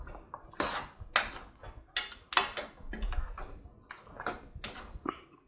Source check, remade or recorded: recorded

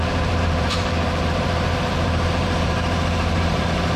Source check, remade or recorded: remade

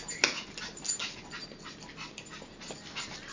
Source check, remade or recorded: recorded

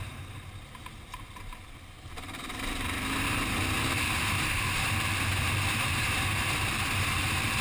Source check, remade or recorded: remade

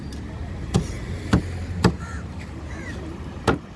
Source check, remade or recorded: remade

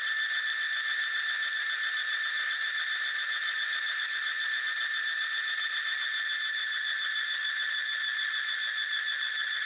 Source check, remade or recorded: recorded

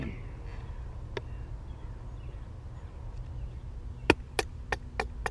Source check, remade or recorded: recorded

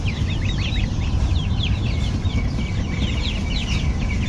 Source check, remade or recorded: remade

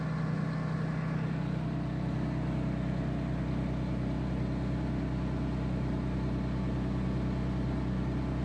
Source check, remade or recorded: recorded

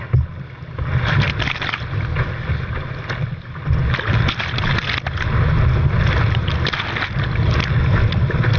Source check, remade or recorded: recorded